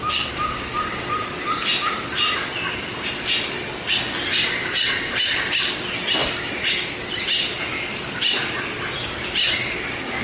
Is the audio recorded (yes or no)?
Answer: yes